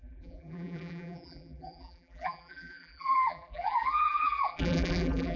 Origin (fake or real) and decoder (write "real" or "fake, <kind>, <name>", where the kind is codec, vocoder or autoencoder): fake, vocoder, BigVGAN v2